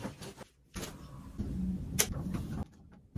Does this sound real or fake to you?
real